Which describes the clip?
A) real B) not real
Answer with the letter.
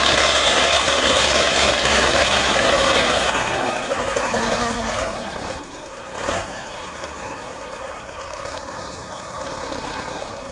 B